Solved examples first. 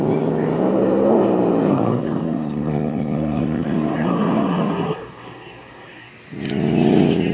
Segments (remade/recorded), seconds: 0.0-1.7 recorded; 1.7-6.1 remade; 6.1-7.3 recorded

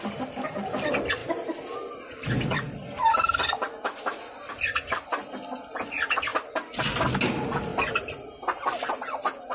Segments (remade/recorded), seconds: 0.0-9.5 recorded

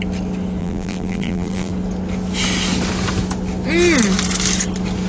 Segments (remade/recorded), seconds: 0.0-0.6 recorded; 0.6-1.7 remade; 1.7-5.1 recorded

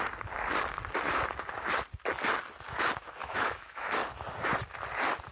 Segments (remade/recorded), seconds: 0.0-3.2 recorded; 3.2-3.9 remade; 3.9-5.3 recorded

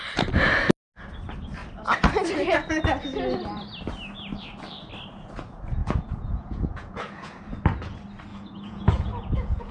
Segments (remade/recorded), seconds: 0.0-5.8 recorded; 5.8-7.4 remade; 7.4-8.3 recorded; 8.3-9.7 remade

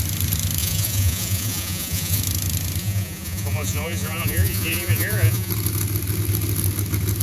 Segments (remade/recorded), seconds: 0.0-0.6 recorded; 0.6-2.2 remade; 2.2-2.8 recorded; 2.8-5.5 remade; 5.5-7.2 recorded